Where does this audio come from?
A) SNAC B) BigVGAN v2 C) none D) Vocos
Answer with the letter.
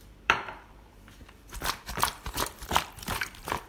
B